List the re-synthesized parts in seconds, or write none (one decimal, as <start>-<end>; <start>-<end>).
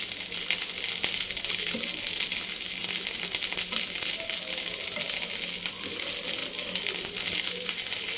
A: none